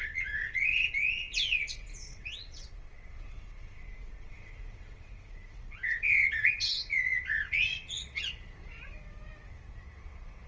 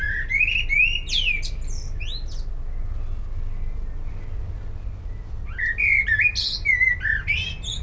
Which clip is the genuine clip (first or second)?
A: second